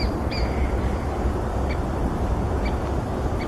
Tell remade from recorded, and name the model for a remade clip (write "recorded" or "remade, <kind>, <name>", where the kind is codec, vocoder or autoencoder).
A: recorded